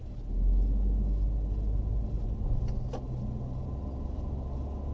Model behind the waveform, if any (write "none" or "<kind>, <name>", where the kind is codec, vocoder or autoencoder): none